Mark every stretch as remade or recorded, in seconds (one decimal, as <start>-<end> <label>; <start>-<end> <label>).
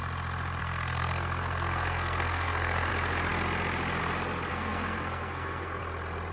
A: 0.0-0.6 recorded; 0.6-2.9 remade; 2.9-4.5 recorded; 4.5-5.8 remade; 5.8-6.3 recorded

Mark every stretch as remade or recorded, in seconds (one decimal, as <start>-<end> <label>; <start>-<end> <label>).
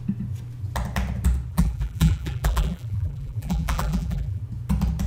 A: 0.0-1.5 recorded; 1.5-4.4 remade; 4.4-5.1 recorded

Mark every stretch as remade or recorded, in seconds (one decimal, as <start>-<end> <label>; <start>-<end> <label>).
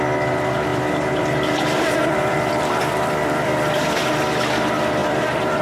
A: 0.0-0.7 recorded; 0.7-4.1 remade; 4.1-5.0 recorded; 5.0-5.6 remade